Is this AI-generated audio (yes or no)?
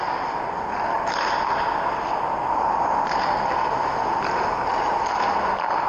no